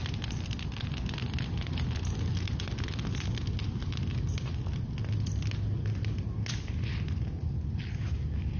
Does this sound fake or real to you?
real